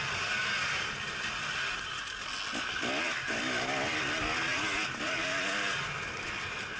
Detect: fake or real real